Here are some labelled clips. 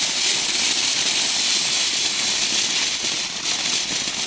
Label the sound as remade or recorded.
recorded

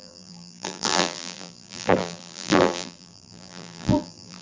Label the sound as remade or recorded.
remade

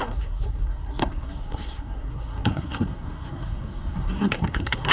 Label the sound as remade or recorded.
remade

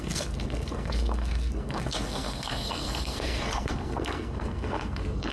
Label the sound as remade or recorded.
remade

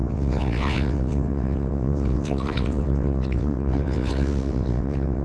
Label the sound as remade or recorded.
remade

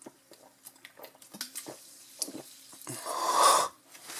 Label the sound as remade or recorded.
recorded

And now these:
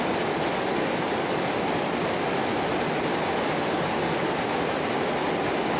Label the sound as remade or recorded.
recorded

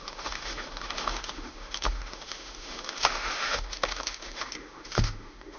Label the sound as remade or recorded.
remade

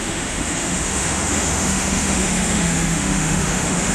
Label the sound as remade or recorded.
remade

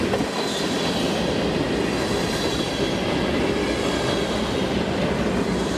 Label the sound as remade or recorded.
recorded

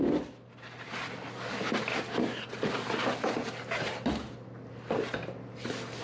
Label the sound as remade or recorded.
recorded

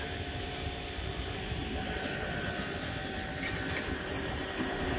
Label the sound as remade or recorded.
remade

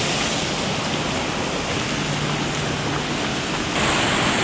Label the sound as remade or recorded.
recorded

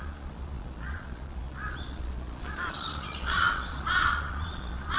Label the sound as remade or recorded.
remade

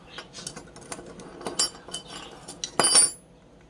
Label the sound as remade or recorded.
recorded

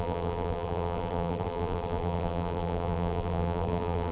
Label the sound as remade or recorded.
remade